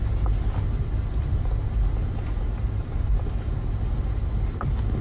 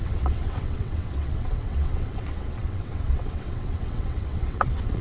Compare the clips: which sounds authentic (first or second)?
first